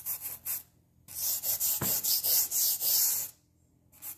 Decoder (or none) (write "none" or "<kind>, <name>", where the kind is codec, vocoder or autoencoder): none